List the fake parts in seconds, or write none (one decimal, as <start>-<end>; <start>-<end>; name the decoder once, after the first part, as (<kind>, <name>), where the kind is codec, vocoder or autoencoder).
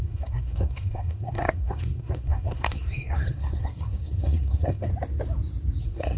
0.0-4.9 (codec, SNAC); 5.8-6.2